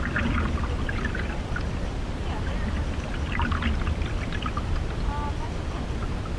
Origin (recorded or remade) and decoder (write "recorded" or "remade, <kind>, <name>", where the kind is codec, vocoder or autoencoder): recorded